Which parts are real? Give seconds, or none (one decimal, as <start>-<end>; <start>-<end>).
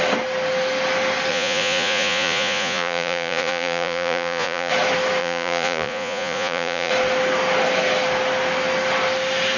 0.0-1.3; 4.7-5.2; 6.9-9.6